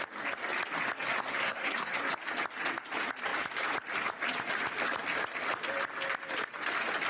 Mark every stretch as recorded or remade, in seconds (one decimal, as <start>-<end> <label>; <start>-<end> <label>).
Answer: 0.0-1.3 recorded; 1.3-2.1 remade; 2.1-7.1 recorded